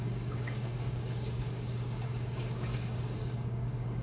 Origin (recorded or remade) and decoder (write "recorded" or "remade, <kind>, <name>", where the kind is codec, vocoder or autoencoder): remade, codec, DAC